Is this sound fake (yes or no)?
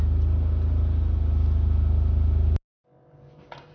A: no